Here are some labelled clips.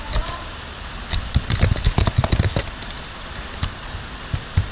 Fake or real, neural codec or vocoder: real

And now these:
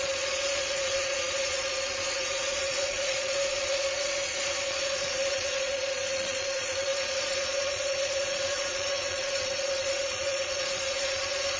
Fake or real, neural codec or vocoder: fake, vocoder, Vocos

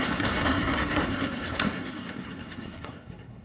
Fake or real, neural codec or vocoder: fake, codec, SNAC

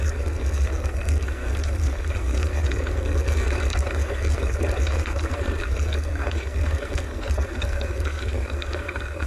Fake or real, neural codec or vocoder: fake, codec, SNAC